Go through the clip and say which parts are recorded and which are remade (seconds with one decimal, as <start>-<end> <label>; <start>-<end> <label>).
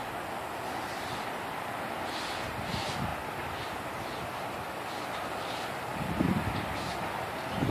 0.0-7.7 recorded